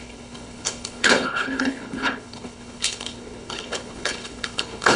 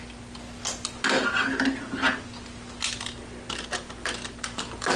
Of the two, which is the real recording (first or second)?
second